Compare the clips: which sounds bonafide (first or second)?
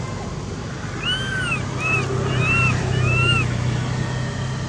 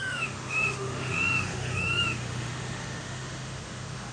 first